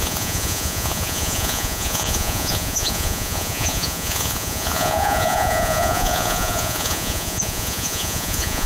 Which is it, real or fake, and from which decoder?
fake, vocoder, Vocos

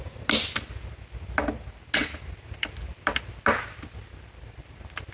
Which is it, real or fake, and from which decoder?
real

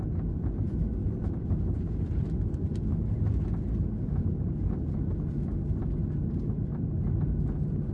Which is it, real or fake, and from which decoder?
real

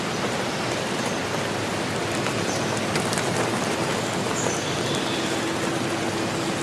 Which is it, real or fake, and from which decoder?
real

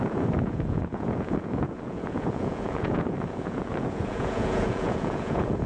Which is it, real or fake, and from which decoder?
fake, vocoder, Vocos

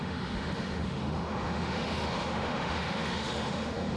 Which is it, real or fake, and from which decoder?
fake, autoencoder, DAC-VAE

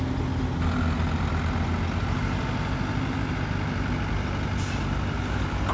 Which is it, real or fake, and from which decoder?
real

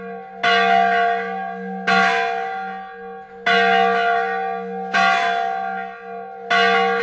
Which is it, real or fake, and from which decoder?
real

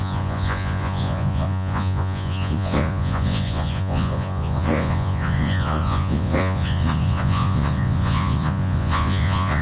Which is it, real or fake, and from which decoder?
fake, vocoder, Vocos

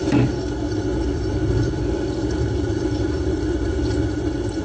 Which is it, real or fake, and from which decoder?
fake, vocoder, BigVGAN v2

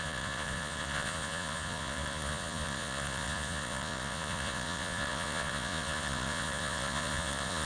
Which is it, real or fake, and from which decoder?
fake, vocoder, Vocos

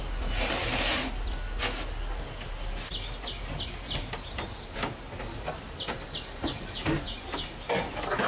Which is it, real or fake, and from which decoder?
real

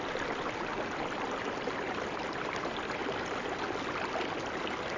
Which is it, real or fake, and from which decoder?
real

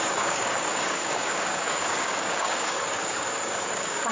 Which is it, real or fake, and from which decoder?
fake, codec, DAC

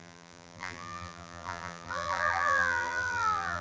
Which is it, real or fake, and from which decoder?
fake, vocoder, BigVGAN v2